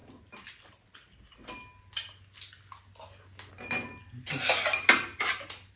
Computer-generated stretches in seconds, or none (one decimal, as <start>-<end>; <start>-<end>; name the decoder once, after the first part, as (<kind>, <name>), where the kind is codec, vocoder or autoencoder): none